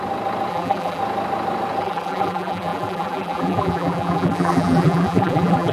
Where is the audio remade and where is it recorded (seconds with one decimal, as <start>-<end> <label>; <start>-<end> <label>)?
0.0-0.5 recorded; 0.5-1.0 remade; 1.0-1.8 recorded; 1.8-5.7 remade